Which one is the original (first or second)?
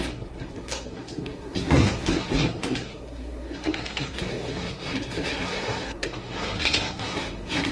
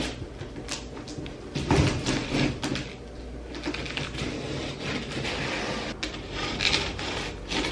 second